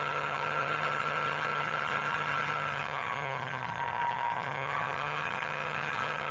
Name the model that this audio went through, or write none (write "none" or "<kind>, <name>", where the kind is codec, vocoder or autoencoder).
vocoder, HiFi-GAN